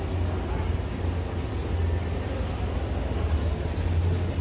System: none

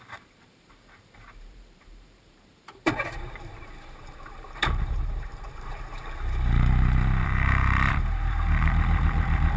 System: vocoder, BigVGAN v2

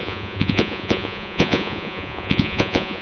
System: vocoder, Vocos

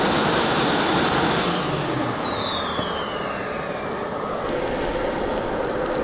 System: none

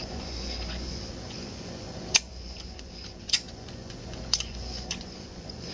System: vocoder, Vocos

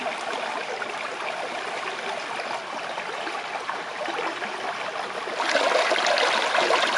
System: none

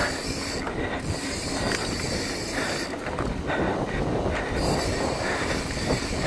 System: none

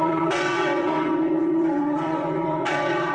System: vocoder, WaveNeXt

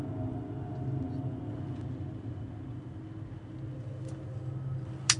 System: none